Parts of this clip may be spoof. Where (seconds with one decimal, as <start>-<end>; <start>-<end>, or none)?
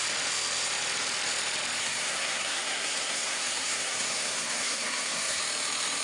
1.8-5.4